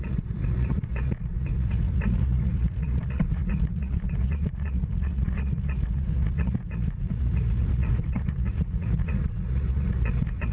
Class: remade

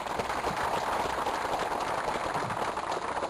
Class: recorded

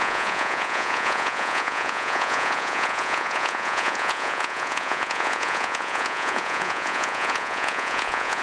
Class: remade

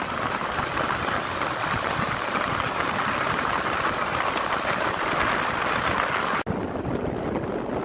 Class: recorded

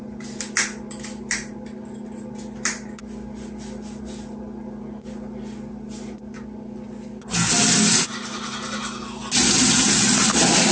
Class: recorded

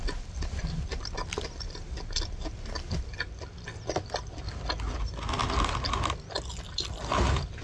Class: recorded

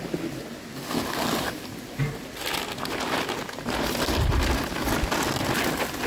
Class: recorded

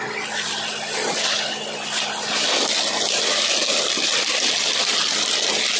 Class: recorded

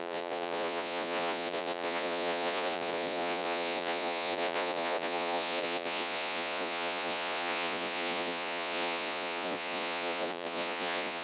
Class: remade